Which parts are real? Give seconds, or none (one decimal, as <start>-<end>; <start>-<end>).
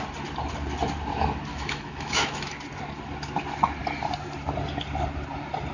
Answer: 0.0-1.5; 2.5-5.7